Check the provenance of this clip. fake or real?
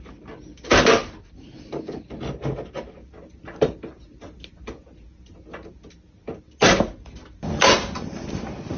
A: real